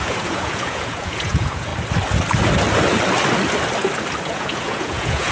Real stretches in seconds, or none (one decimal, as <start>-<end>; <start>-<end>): 1.7-4.2